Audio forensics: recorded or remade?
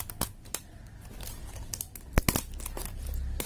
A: recorded